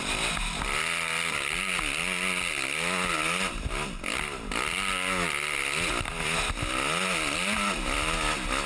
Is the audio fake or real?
real